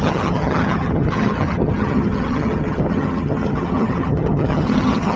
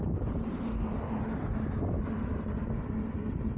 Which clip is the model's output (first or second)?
first